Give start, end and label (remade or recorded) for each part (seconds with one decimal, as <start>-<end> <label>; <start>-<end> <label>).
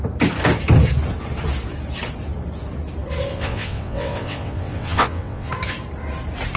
0.0-3.3 recorded; 3.3-5.5 remade; 5.5-6.6 recorded